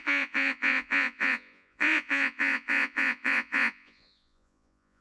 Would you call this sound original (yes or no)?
no